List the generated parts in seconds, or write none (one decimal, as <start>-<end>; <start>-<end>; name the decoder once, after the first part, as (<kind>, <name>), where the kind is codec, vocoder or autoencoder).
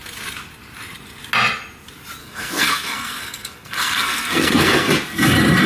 2.2-4.9 (codec, SNAC)